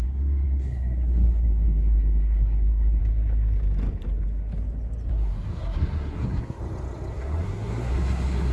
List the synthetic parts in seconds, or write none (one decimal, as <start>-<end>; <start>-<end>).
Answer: 0.0-3.0; 5.1-6.6; 7.1-8.5